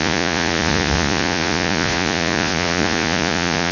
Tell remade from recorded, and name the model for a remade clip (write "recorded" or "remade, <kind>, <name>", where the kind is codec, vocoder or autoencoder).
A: remade, vocoder, Vocos